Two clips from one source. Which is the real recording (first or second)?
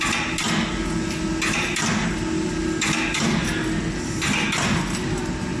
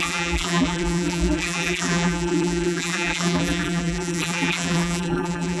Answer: first